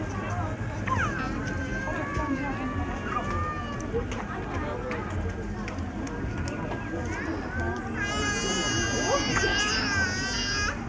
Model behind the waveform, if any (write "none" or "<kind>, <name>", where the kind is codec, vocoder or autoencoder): none